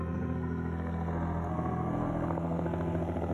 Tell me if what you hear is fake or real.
fake